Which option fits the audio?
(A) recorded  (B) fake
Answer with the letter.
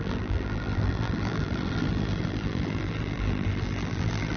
B